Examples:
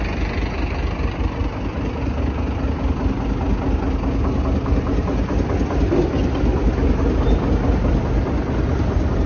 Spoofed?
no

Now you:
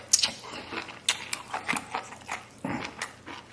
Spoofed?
no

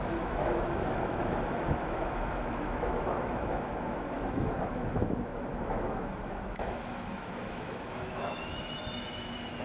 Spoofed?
yes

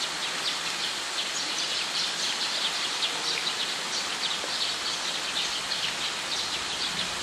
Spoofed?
no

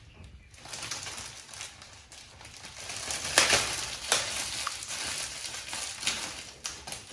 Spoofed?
no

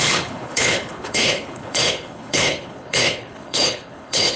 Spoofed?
yes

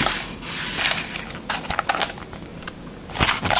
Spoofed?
no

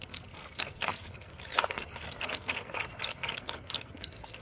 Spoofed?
yes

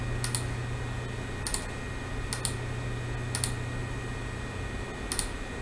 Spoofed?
no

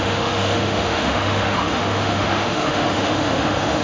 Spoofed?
yes